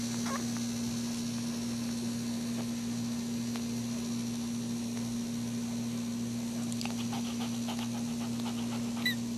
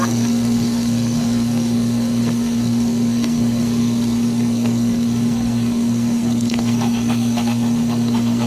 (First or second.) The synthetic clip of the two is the second